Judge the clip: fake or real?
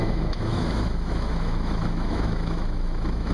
fake